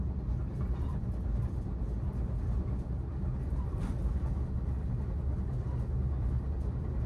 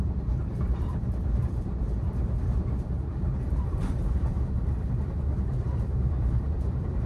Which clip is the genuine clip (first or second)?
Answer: first